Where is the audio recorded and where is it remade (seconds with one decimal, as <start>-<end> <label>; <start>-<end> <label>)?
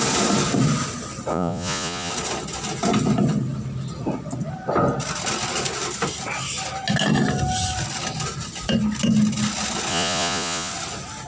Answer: 0.0-1.3 recorded; 1.3-2.1 remade; 2.1-9.9 recorded; 9.9-10.7 remade; 10.7-11.3 recorded